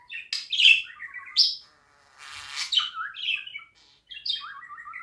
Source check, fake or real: real